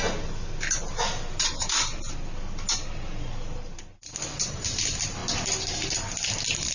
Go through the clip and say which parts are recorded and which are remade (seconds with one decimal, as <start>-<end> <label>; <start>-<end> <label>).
0.0-6.7 recorded